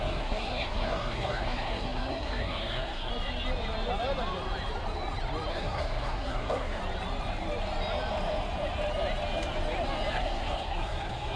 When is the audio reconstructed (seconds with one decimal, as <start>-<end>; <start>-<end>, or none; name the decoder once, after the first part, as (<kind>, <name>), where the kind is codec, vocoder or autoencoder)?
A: 0.0-3.1 (codec, SNAC); 5.5-6.8; 10.1-11.4